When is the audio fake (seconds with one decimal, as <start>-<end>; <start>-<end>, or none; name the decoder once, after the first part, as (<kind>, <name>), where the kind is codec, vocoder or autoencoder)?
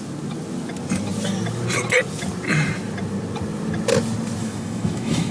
4.4-5.3 (autoencoder, DAC-VAE)